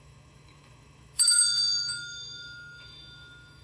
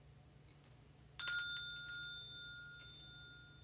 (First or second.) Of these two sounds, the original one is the second